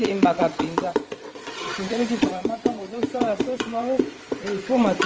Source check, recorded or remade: remade